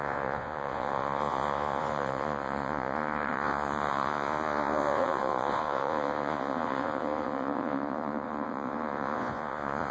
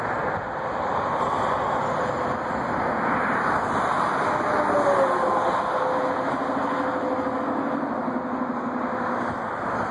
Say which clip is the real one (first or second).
second